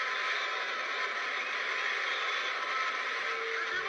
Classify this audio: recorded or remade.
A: recorded